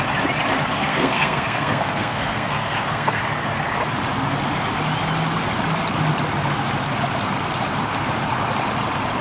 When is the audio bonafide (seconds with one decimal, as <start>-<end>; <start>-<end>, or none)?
0.0-0.8; 3.2-9.2